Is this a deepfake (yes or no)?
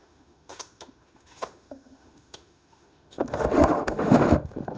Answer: yes